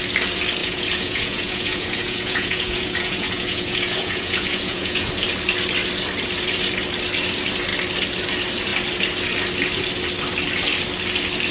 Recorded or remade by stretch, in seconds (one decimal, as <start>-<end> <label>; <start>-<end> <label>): 0.0-0.6 recorded; 0.6-5.1 remade; 5.1-11.5 recorded